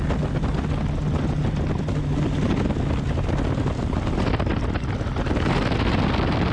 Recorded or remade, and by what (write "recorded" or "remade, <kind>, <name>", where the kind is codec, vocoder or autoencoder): recorded